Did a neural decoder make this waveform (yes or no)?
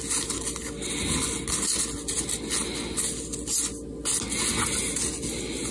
no